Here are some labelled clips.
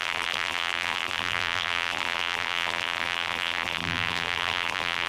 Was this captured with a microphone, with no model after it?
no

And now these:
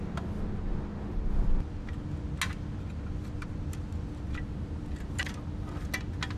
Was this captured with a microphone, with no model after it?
yes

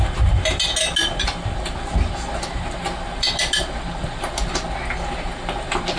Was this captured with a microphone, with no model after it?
yes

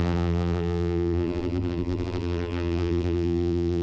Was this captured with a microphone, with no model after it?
no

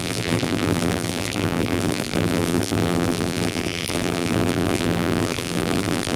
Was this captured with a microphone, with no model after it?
no